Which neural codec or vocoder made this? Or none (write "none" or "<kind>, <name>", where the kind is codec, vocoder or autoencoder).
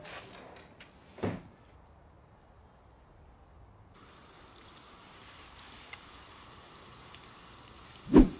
none